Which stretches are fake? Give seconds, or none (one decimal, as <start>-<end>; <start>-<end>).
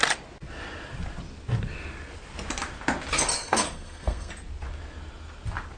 3.3-4.3